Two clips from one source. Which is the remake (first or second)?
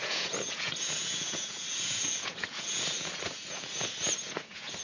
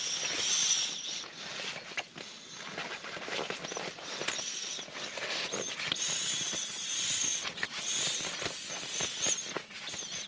first